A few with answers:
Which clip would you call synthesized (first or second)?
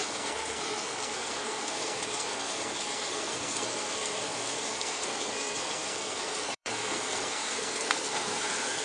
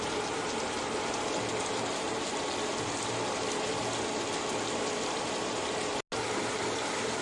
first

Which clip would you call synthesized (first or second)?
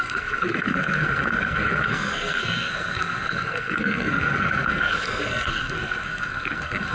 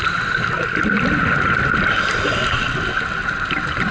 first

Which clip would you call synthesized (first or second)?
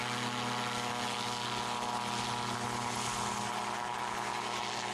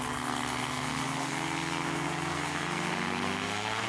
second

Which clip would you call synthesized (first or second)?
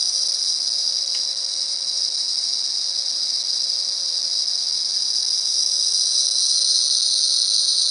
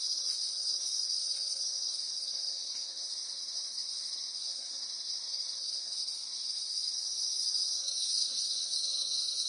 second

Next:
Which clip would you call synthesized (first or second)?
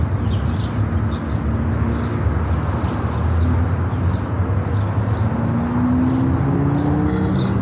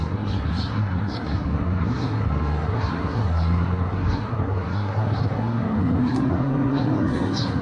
second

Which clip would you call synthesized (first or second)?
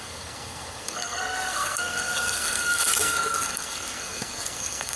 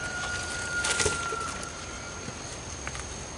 first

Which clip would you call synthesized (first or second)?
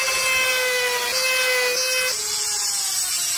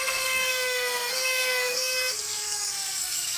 second